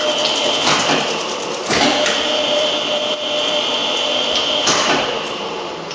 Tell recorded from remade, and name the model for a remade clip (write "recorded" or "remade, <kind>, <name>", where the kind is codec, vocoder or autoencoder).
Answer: remade, vocoder, BigVGAN v2